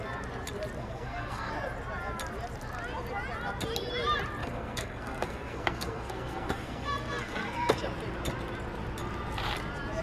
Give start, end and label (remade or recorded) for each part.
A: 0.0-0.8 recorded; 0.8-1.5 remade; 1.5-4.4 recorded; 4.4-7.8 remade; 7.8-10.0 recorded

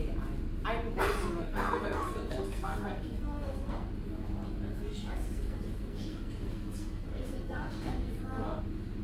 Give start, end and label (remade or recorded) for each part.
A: 0.0-1.3 recorded; 1.3-3.9 remade; 3.9-4.7 recorded; 4.7-8.6 remade; 8.6-9.0 recorded

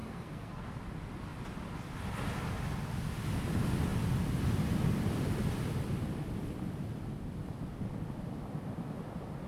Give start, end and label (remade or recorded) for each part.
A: 0.0-0.8 remade; 0.8-9.5 recorded

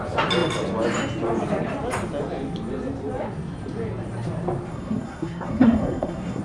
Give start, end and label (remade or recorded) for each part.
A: 0.0-4.7 recorded; 4.7-6.4 remade

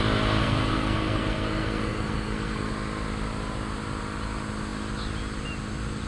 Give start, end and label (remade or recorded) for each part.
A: 0.0-0.4 recorded; 0.4-2.7 remade; 2.7-6.1 recorded

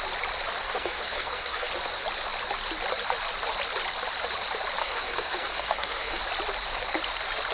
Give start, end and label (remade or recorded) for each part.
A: 0.0-0.6 recorded; 0.6-1.7 remade; 1.7-4.8 recorded; 4.8-6.2 remade; 6.2-7.5 recorded